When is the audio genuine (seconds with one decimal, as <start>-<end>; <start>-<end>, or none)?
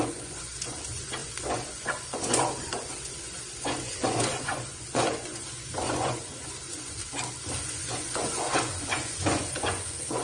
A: 7.0-7.6